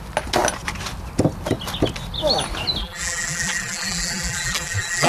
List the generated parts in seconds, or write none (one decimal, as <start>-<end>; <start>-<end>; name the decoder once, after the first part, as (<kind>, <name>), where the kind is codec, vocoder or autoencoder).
2.8-5.1 (vocoder, BigVGAN v2)